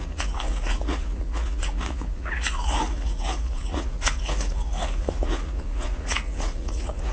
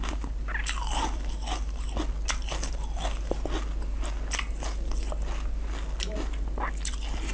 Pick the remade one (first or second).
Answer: first